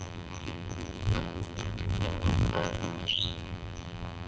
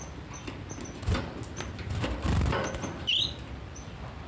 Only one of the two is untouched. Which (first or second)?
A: second